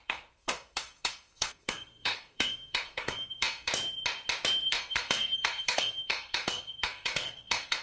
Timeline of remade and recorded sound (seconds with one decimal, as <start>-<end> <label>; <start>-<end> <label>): 0.0-3.7 remade; 3.7-4.7 recorded; 4.7-7.8 remade